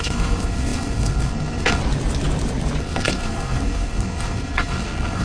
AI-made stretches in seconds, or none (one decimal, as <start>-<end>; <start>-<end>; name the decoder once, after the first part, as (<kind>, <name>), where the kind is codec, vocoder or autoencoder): 0.0-1.8 (codec, SNAC); 2.8-5.2